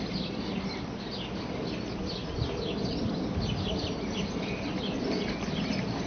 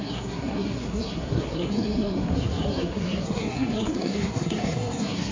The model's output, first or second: second